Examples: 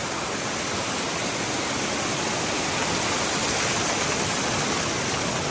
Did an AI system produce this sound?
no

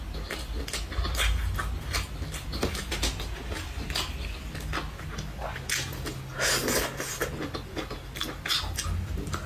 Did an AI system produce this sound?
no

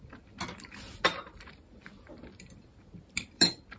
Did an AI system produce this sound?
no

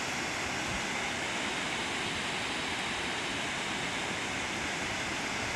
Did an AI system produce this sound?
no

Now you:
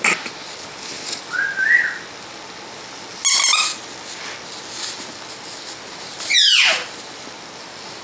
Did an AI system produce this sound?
no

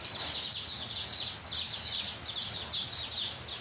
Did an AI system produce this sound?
no